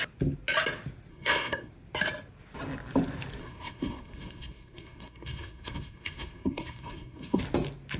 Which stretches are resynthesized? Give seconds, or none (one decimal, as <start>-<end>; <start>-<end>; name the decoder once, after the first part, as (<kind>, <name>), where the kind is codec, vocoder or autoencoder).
1.1-1.7 (codec, SNAC); 3.4-7.4